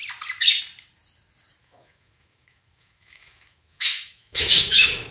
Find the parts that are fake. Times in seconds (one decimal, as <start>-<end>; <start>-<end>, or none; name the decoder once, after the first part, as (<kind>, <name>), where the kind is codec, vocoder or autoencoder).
1.6-5.1 (autoencoder, DAC-VAE)